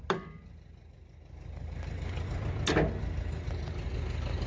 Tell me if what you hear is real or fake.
real